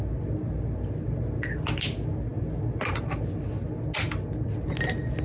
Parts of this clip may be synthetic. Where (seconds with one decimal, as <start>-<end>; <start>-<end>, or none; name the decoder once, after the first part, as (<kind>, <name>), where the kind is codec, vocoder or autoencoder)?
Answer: none